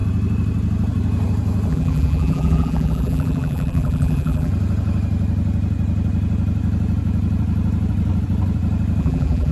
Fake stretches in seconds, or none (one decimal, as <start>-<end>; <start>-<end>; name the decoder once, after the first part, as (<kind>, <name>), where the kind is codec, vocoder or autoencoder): 1.7-4.5 (vocoder, BigVGAN v2); 9.0-9.5